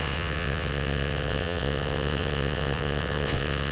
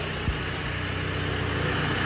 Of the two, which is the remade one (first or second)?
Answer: first